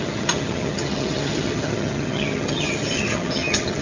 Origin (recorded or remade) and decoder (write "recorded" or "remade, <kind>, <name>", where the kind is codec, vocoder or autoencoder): remade, vocoder, HiFi-GAN